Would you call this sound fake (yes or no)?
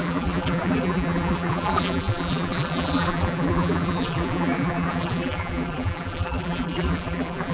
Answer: yes